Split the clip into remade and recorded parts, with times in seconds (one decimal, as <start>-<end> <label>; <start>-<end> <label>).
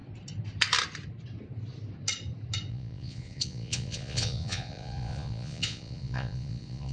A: 0.0-2.7 recorded; 2.7-6.9 remade